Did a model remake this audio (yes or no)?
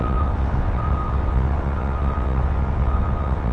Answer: yes